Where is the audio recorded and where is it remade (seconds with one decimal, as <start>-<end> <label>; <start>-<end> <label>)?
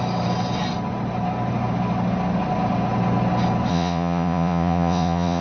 0.0-3.7 recorded; 3.7-5.4 remade